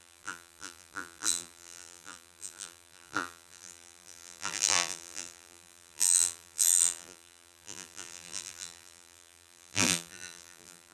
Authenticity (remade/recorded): remade